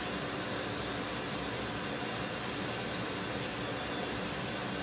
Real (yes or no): yes